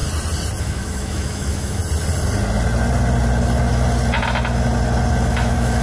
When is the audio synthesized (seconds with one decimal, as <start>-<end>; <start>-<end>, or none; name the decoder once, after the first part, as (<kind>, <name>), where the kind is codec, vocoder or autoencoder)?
0.6-1.8 (autoencoder, DAC-VAE); 5.3-5.8